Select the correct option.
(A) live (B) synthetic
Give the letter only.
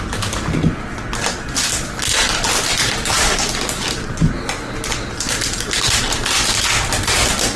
A